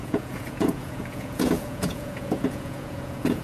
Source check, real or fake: fake